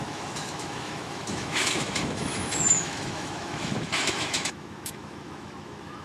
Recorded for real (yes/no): no